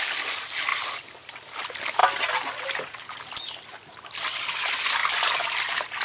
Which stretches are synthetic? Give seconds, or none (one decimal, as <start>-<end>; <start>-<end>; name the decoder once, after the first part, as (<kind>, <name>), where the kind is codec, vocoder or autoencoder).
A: 0.7-1.6 (vocoder, BigVGAN v2)